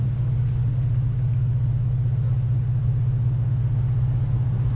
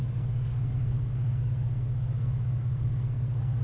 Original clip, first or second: first